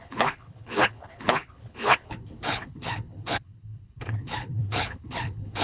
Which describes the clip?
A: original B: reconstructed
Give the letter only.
B